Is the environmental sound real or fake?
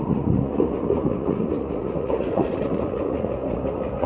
fake